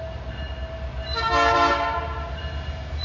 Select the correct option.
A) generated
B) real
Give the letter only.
B